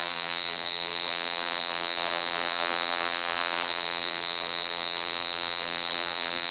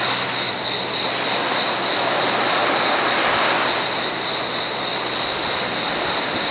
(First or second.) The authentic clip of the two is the second